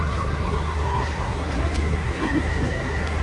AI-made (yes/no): yes